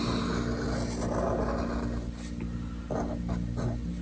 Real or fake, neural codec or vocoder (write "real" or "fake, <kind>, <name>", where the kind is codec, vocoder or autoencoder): real